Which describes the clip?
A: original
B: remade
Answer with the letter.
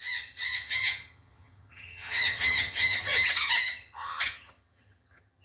B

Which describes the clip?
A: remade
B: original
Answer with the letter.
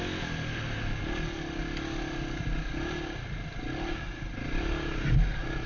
B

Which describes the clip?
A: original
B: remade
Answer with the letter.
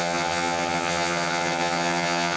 B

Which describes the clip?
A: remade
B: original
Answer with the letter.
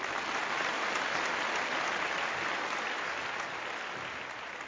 B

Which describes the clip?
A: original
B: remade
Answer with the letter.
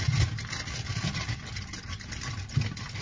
A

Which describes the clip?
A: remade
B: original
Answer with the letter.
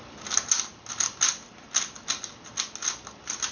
B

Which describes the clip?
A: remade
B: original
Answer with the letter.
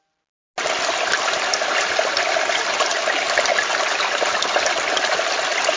B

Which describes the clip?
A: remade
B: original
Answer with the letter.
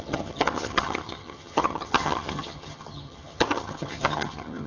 A